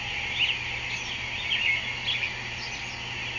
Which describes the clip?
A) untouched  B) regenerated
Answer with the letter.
A